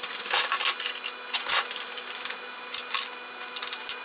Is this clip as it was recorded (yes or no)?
yes